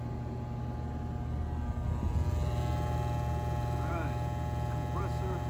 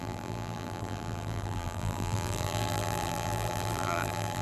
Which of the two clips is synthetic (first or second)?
second